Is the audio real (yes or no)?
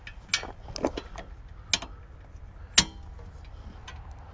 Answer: yes